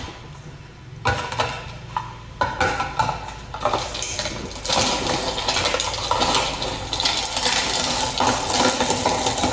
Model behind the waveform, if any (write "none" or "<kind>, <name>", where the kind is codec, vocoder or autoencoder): none